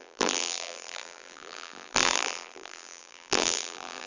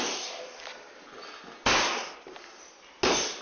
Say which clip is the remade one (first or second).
first